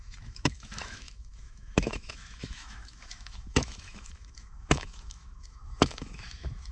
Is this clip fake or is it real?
fake